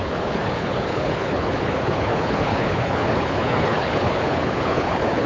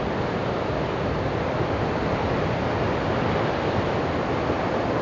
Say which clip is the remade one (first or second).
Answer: first